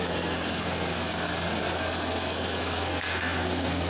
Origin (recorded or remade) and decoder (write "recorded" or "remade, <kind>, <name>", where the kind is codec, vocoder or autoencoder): remade, codec, SNAC